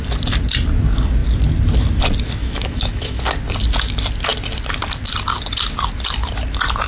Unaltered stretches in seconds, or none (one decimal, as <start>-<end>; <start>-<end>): 0.0-2.4; 3.2-6.9